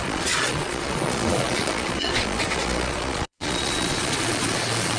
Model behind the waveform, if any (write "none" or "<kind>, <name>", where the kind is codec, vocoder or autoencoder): vocoder, Vocos